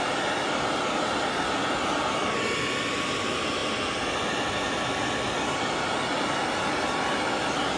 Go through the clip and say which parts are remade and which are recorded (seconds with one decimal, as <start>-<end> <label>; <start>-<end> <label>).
0.0-7.8 recorded